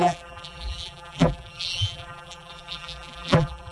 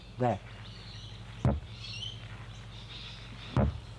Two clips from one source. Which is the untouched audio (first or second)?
second